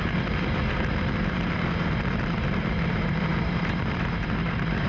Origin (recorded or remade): remade